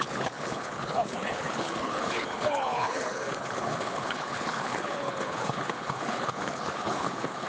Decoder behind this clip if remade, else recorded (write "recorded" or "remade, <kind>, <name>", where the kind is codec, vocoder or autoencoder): remade, codec, HILCodec